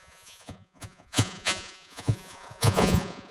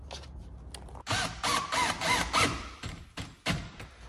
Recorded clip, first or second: second